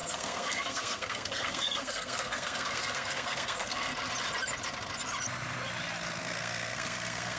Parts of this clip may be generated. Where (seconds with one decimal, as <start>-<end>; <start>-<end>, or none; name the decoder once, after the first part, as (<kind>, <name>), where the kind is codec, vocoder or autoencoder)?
0.0-3.9 (codec, SNAC); 6.2-7.4